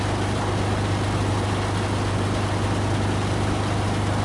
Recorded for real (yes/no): yes